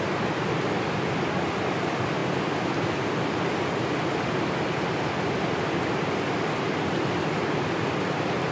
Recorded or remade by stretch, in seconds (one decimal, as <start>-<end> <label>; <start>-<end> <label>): 0.0-8.5 recorded